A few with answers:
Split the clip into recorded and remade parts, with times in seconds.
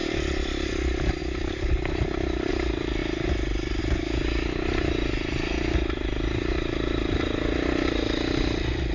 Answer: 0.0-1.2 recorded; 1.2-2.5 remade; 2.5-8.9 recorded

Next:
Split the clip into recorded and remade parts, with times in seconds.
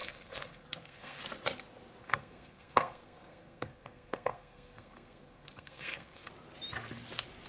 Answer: 0.0-1.2 remade; 1.2-2.0 recorded; 2.0-6.3 remade; 6.3-7.5 recorded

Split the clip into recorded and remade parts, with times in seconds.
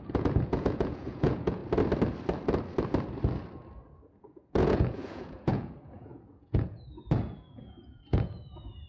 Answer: 0.0-1.6 remade; 1.6-4.1 recorded; 4.1-8.9 remade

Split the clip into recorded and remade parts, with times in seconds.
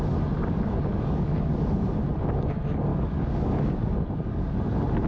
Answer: 0.0-0.9 recorded; 0.9-1.9 remade; 1.9-2.9 recorded; 2.9-4.3 remade; 4.3-5.1 recorded